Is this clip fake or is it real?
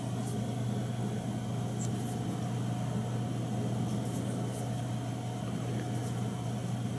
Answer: real